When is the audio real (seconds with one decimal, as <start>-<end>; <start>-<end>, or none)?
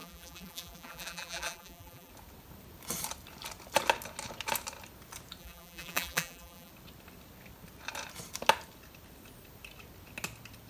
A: 2.1-5.4; 6.7-10.7